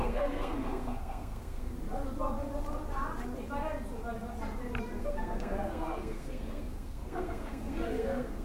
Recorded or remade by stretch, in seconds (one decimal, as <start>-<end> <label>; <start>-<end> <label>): 0.0-1.7 remade; 1.7-5.0 recorded; 5.0-8.4 remade